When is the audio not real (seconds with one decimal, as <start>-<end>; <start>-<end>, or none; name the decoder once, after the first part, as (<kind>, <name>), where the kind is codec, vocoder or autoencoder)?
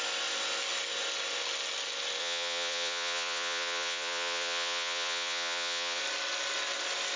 2.2-6.0 (vocoder, Vocos)